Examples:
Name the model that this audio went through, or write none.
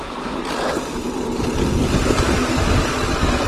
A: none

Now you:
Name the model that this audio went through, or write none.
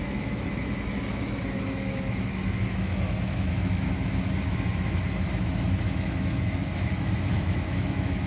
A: autoencoder, DAC-VAE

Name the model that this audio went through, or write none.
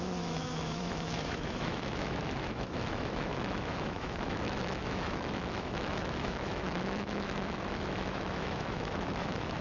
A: autoencoder, DAC-VAE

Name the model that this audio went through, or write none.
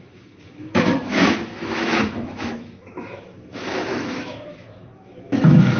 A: autoencoder, DAC-VAE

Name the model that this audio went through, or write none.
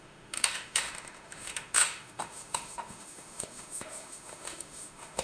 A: autoencoder, DAC-VAE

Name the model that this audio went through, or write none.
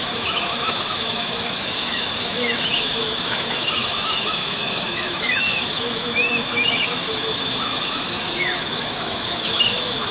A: autoencoder, DAC-VAE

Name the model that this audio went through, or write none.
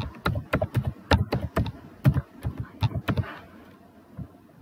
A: none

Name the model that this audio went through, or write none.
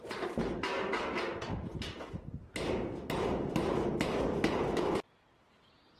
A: none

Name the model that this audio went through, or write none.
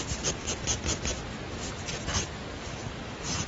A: none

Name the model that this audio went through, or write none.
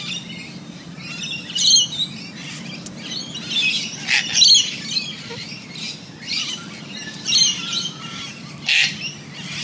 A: none